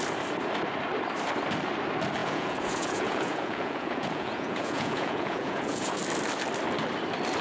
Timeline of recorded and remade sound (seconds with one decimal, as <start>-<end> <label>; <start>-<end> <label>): 0.0-2.2 recorded; 2.2-6.0 remade; 6.0-7.4 recorded